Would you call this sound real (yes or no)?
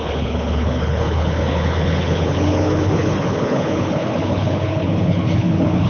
no